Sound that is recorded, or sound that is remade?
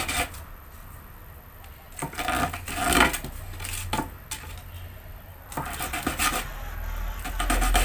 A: recorded